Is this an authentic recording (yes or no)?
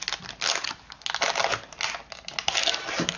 yes